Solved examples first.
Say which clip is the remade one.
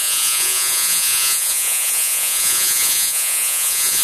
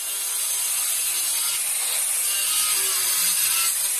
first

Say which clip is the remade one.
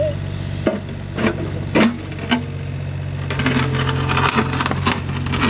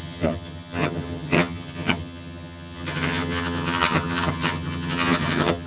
second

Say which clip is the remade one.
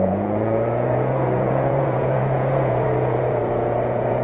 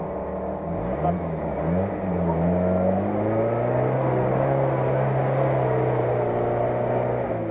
first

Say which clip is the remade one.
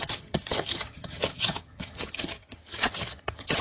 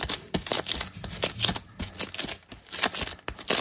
first